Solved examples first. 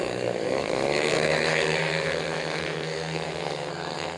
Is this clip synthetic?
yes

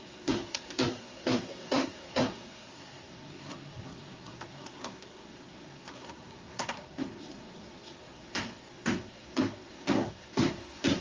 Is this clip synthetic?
yes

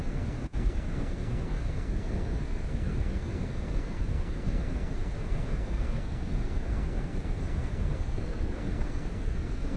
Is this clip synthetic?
yes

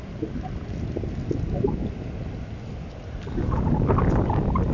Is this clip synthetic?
no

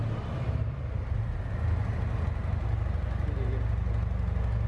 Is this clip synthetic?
no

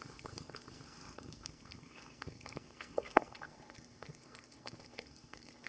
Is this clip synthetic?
yes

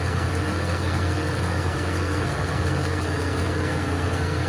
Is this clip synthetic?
yes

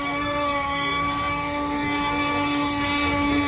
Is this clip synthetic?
yes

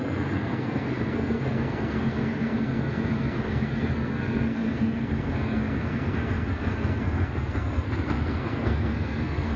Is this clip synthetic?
yes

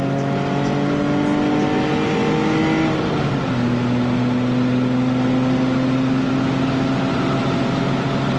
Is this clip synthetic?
no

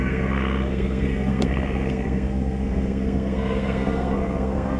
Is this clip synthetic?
yes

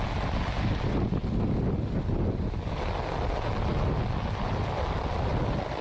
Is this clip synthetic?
no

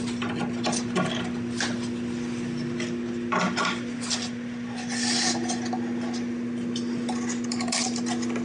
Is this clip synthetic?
no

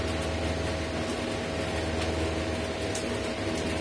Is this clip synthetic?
no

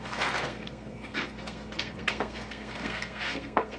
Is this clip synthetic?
yes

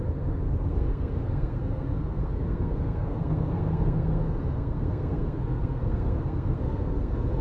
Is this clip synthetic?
yes